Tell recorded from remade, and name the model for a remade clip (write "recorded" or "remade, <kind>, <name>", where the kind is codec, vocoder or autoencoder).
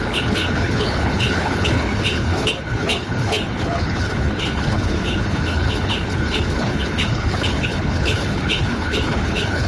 remade, codec, HILCodec